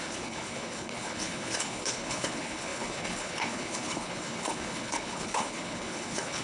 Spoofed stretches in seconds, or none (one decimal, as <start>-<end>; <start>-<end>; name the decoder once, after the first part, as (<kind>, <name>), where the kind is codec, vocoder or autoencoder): 0.0-6.4 (codec, HILCodec)